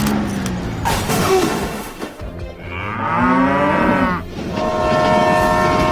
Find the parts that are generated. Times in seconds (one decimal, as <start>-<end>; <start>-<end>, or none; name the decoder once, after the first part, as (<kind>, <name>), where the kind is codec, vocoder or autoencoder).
1.1-2.2 (autoencoder, DAC-VAE)